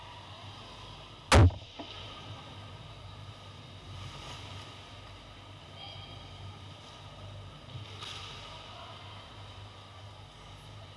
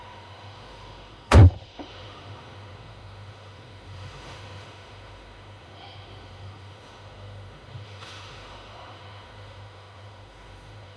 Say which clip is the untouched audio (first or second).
first